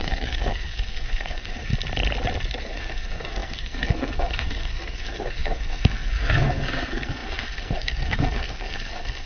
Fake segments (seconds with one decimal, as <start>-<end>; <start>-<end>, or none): 0.0-1.7; 2.6-9.3